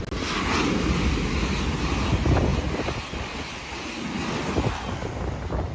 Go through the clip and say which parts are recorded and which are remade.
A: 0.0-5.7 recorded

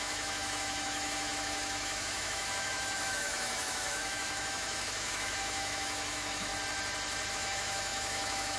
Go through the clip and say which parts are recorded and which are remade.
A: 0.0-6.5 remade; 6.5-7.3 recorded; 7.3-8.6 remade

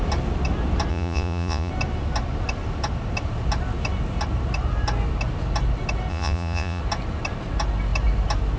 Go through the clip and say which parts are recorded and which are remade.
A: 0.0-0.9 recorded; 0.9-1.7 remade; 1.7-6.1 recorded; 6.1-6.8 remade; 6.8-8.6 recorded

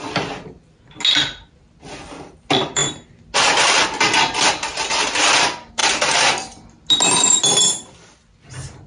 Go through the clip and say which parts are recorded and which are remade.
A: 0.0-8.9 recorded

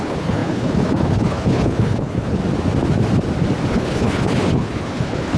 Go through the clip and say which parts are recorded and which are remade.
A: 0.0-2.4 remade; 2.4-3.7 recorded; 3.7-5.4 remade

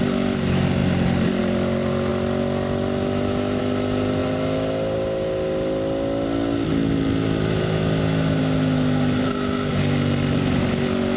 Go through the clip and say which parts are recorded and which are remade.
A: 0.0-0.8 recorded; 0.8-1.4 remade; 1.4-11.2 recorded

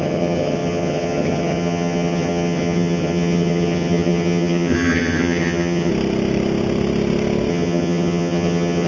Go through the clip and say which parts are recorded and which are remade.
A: 0.0-5.9 remade; 5.9-7.5 recorded; 7.5-8.9 remade

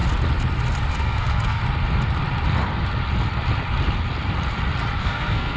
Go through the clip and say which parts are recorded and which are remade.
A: 0.0-0.9 recorded; 0.9-1.6 remade; 1.6-5.0 recorded; 5.0-5.6 remade